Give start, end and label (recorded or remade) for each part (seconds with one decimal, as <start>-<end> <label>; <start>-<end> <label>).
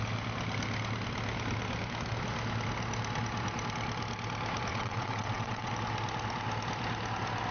0.0-4.7 recorded; 4.7-5.7 remade; 5.7-7.5 recorded